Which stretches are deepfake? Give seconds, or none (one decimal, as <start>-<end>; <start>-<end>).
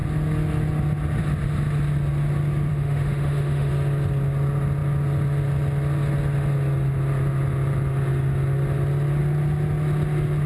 2.7-3.7